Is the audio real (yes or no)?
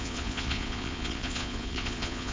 no